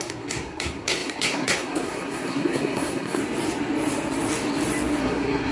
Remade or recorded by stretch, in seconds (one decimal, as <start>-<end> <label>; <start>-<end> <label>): 0.0-3.2 remade; 3.2-5.0 recorded; 5.0-5.5 remade